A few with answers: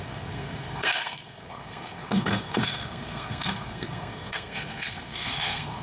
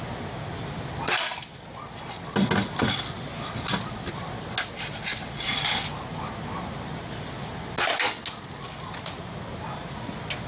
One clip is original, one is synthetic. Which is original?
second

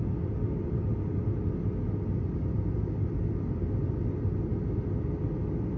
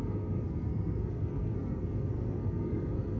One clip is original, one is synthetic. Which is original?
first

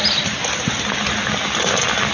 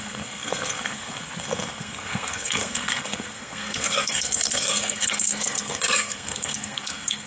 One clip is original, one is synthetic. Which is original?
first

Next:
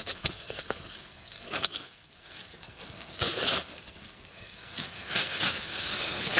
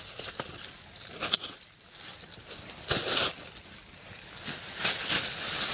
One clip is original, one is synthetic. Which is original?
second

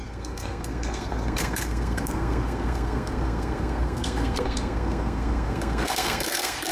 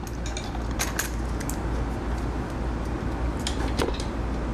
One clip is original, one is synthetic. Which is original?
second